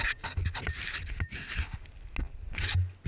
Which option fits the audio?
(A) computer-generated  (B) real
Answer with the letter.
B